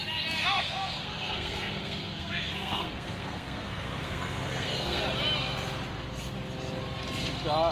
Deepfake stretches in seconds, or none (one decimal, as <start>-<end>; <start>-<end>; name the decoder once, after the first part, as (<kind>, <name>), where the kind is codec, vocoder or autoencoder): 0.4-5.0 (codec, SNAC)

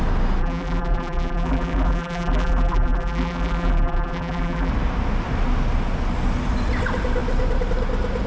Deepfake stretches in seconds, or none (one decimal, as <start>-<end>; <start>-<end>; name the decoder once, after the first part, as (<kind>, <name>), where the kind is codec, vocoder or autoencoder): 0.4-4.7 (vocoder, BigVGAN v2)

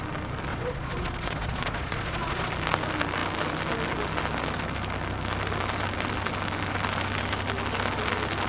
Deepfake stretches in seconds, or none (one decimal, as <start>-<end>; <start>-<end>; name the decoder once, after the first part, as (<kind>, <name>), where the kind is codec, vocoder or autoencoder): 0.5-2.5 (vocoder, Vocos)

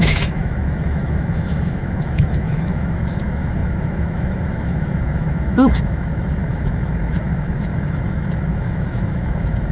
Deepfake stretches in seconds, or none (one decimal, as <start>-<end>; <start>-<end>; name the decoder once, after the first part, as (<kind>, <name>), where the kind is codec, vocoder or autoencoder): 0.0-9.7 (autoencoder, DAC-VAE)

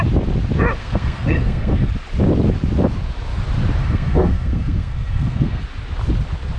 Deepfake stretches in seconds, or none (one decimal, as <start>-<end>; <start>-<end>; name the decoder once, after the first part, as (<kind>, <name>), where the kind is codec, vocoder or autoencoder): 0.8-1.9 (codec, SNAC); 3.8-5.6